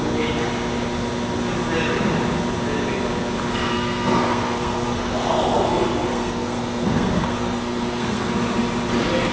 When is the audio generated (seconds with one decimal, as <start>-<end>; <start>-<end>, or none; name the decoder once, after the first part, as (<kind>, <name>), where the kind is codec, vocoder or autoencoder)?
3.7-8.3 (codec, SNAC)

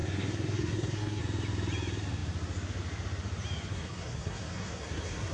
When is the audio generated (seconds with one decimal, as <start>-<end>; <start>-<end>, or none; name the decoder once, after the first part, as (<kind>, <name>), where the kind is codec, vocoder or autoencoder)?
0.0-1.2 (codec, SNAC); 3.7-5.3

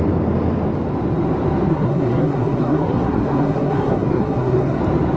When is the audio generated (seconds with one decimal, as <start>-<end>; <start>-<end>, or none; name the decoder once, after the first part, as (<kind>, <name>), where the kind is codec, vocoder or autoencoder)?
1.7-4.8 (codec, SNAC)